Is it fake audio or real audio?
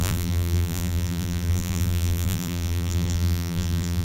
fake